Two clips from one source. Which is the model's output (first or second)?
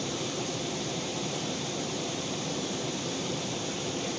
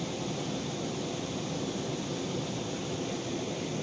first